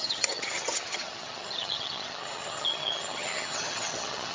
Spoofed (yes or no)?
yes